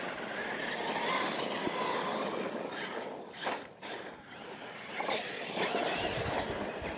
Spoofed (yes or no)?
no